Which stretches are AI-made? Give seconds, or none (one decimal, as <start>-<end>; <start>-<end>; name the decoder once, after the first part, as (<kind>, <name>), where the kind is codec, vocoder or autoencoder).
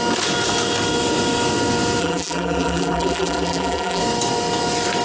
2.0-4.0 (vocoder, BigVGAN v2)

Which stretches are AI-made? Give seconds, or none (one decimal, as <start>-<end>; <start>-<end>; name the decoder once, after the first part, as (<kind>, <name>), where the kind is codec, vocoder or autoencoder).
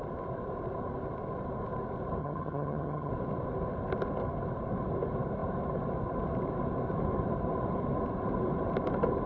2.2-3.1 (vocoder, HiFi-GAN)